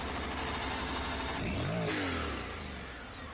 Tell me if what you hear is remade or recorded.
recorded